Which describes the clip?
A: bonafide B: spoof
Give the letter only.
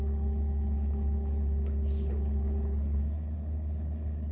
B